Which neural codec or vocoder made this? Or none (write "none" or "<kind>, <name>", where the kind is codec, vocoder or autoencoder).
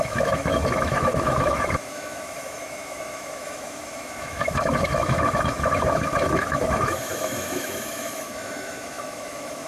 autoencoder, DAC-VAE